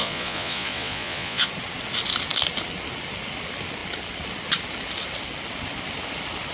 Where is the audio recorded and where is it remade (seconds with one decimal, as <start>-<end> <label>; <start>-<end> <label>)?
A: 0.0-1.5 remade; 1.5-6.5 recorded